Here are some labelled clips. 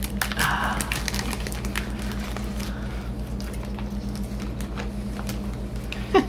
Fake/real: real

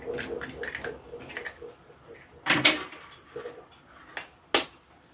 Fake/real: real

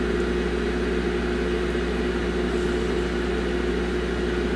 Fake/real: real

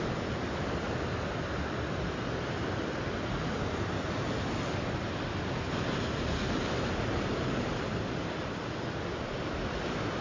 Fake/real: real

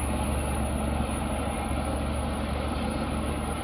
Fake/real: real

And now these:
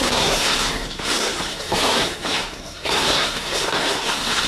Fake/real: fake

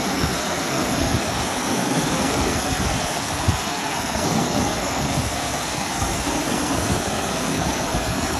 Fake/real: fake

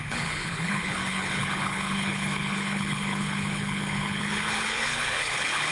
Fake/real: fake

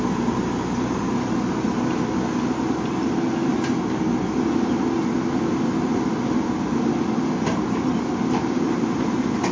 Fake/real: real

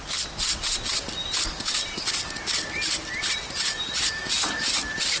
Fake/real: real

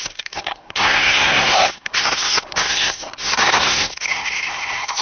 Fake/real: fake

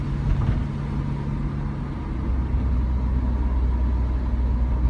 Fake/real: real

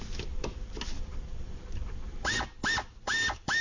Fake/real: real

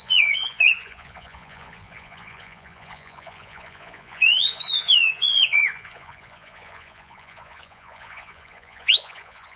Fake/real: fake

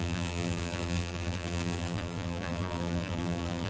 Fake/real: fake